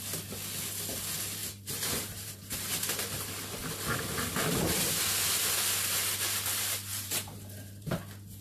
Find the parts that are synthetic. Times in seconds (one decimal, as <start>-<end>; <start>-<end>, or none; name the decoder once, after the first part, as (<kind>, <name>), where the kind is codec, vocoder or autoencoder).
1.4-2.6 (vocoder, BigVGAN v2); 4.4-5.0; 6.9-7.9